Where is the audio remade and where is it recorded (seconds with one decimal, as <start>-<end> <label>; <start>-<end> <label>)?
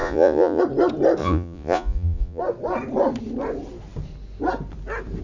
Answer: 0.0-0.6 remade; 0.6-1.2 recorded; 1.2-2.4 remade; 2.4-5.2 recorded